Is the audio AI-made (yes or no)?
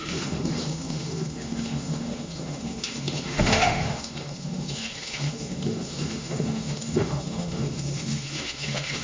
yes